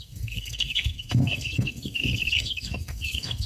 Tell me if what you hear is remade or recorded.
remade